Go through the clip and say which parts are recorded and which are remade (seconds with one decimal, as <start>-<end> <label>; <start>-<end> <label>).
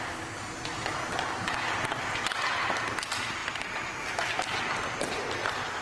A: 0.0-5.8 recorded